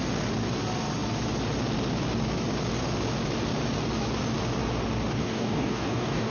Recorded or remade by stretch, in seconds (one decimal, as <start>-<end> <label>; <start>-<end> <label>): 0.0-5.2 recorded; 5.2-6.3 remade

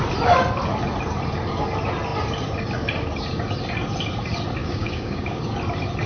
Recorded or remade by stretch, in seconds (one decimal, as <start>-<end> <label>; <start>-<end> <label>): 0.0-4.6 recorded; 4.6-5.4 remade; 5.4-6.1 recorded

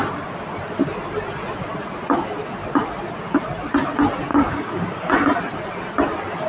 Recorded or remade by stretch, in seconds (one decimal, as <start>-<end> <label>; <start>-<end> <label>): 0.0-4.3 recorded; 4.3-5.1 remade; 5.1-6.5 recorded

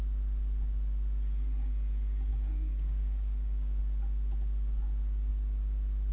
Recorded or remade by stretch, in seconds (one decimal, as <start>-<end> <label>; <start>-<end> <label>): 0.0-2.3 recorded; 2.3-3.8 remade; 3.8-6.1 recorded

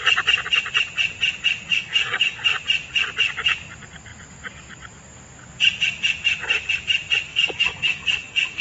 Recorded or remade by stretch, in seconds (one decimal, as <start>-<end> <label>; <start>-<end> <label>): 0.0-1.7 recorded; 1.7-2.4 remade; 2.4-7.3 recorded; 7.3-8.6 remade

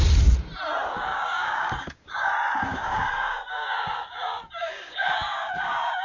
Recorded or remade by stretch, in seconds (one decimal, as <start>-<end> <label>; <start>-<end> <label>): 0.0-1.1 recorded; 1.1-2.3 remade; 2.3-2.7 recorded; 2.7-6.0 remade

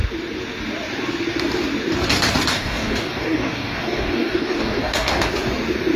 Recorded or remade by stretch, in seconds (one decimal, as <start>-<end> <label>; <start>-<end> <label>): 0.0-2.5 recorded; 2.5-5.3 remade; 5.3-6.0 recorded